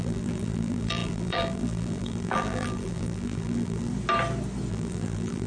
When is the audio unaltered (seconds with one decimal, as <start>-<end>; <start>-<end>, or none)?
3.9-4.7